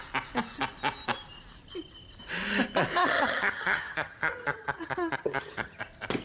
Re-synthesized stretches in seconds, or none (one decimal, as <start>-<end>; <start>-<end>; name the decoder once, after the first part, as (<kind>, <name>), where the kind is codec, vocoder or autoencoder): 3.0-5.8 (vocoder, HiFi-GAN)